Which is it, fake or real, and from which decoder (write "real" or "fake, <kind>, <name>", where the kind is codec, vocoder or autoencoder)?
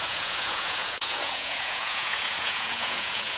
fake, vocoder, Vocos